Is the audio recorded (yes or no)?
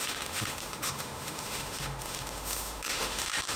no